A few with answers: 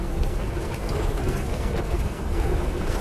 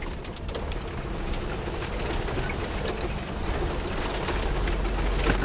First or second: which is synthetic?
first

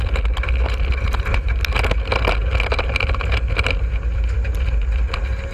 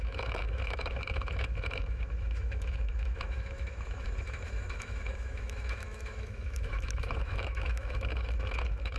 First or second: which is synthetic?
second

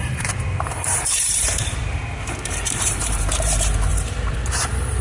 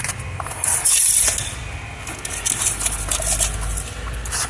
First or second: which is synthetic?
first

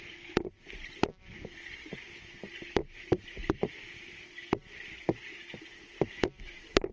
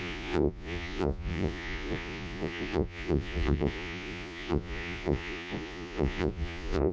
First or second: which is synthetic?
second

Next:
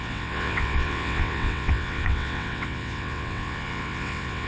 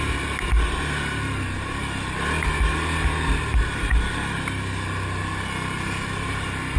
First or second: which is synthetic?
first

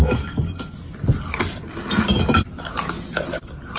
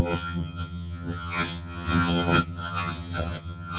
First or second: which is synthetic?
second